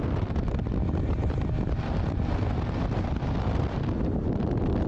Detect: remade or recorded recorded